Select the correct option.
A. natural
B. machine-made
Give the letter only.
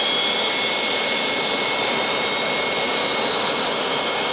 A